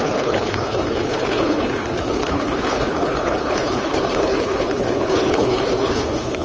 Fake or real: fake